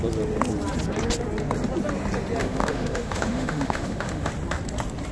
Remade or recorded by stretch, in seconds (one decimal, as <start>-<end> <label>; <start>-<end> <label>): 0.0-2.4 recorded; 2.4-4.3 remade; 4.3-5.1 recorded